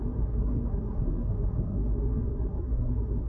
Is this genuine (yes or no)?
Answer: no